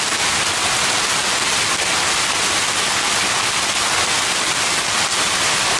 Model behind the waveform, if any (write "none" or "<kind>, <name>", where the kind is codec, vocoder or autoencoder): none